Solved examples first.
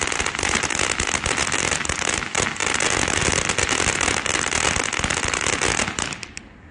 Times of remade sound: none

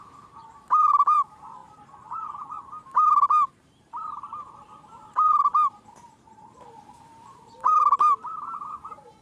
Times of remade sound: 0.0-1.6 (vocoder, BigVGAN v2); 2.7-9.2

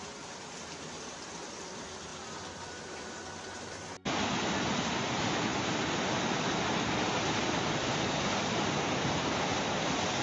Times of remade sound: 2.1-2.8 (vocoder, BigVGAN v2)

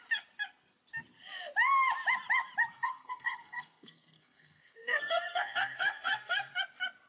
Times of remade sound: 2.7-6.5 (codec, SNAC)

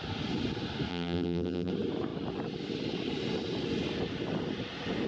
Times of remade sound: 0.9-1.7 (vocoder, BigVGAN v2)

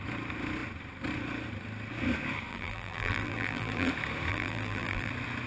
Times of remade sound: 2.5-3.9 (vocoder, BigVGAN v2); 4.3-5.1

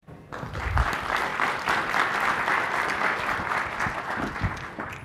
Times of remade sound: none